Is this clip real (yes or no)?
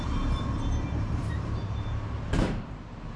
no